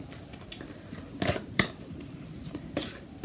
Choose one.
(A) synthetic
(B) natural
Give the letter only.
B